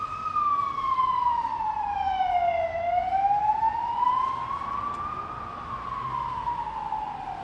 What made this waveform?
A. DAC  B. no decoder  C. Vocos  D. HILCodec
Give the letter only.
B